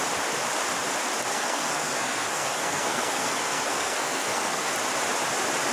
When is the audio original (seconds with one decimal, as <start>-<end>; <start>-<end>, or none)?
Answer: 0.0-1.3; 4.7-5.7